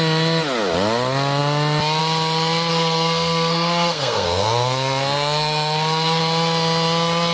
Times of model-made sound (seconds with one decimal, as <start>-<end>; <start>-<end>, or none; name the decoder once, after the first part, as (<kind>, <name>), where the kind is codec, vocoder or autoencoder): 2.7-6.2 (codec, SNAC)